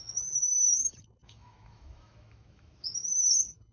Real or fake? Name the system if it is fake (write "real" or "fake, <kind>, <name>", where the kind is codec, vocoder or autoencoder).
fake, autoencoder, DAC-VAE